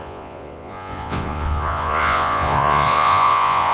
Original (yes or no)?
no